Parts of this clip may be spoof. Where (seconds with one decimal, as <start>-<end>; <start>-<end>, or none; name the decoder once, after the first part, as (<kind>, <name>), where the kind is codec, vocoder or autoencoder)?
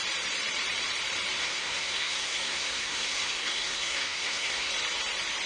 1.4-4.7 (codec, SNAC)